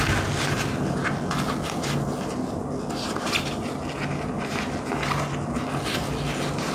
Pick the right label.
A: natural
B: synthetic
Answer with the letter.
A